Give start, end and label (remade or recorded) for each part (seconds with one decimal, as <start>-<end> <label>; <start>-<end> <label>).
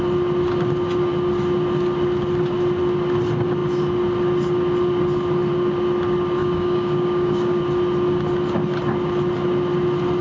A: 0.0-6.4 recorded; 6.4-7.6 remade; 7.6-10.2 recorded